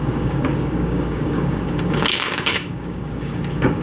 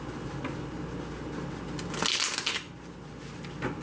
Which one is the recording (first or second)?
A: second